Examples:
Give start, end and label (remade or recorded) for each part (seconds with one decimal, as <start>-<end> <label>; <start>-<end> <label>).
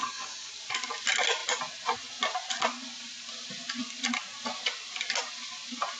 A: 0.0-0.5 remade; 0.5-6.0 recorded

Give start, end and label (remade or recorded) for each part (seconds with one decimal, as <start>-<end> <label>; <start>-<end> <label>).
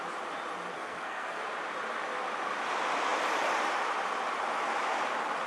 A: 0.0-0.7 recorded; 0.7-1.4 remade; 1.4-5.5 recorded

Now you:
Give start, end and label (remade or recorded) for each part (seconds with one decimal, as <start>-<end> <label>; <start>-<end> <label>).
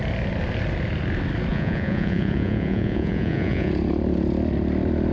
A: 0.0-1.5 recorded; 1.5-3.7 remade; 3.7-5.1 recorded